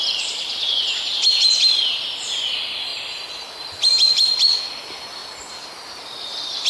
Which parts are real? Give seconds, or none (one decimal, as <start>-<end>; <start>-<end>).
0.0-6.7

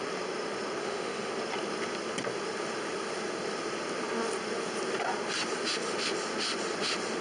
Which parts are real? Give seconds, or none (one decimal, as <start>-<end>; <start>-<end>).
0.0-0.8; 1.3-7.2